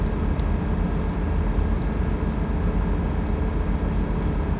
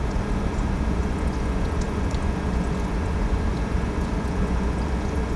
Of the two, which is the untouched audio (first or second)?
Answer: first